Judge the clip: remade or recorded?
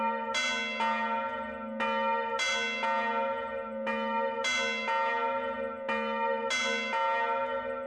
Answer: recorded